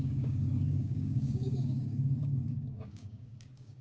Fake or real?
fake